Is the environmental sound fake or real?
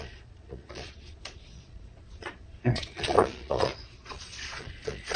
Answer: fake